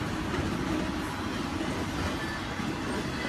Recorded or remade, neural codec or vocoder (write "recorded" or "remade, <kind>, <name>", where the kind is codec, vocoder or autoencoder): recorded